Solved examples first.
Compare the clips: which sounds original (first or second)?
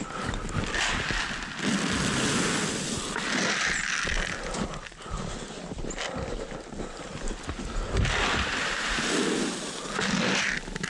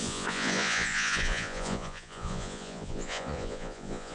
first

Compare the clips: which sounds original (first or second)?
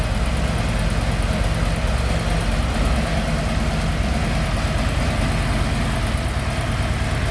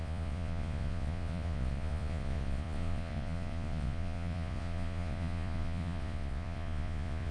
first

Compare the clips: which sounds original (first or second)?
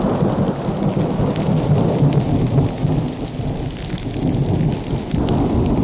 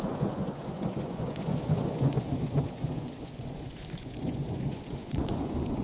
first